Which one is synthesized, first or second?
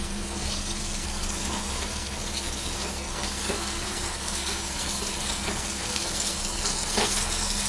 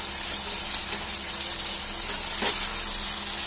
first